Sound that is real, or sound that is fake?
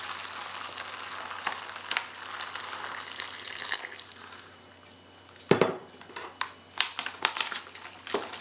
real